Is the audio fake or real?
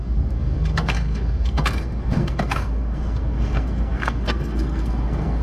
fake